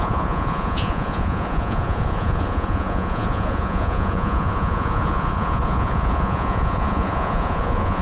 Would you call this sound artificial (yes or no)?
yes